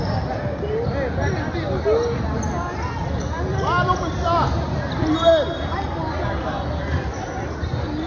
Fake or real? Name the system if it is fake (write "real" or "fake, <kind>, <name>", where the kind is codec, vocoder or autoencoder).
real